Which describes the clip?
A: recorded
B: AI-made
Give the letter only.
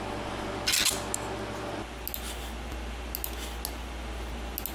A